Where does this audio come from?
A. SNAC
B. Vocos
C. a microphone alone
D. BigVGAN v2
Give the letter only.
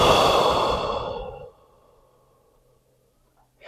D